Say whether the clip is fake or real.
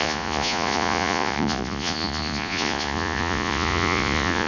fake